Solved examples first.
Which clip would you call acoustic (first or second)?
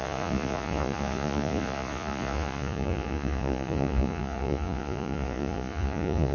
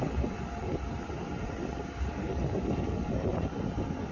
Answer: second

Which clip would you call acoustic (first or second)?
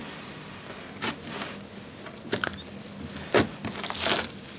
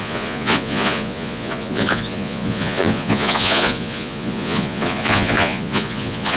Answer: first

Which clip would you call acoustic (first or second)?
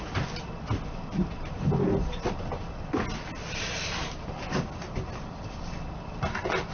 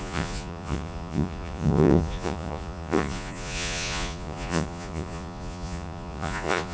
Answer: first